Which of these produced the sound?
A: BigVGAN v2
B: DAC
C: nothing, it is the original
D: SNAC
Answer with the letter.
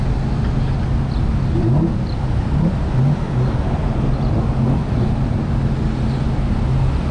C